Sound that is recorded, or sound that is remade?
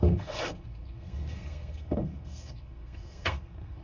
remade